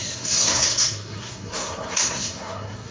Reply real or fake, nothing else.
fake